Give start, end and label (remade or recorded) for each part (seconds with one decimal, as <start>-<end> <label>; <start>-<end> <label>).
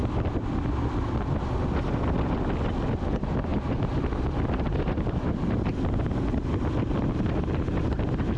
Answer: 0.0-8.4 recorded